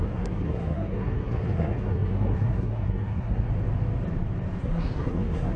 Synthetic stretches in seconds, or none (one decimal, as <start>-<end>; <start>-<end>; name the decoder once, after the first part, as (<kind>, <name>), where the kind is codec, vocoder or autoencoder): 0.0-3.5 (codec, SNAC); 4.6-5.6